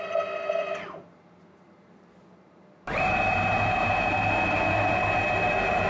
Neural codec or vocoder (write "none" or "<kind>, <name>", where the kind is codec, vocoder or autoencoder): vocoder, BigVGAN v2